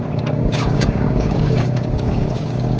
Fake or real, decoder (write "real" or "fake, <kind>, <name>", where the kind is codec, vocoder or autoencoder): fake, codec, DAC